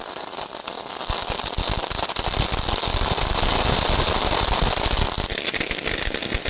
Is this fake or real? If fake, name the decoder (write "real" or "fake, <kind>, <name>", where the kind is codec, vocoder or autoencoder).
real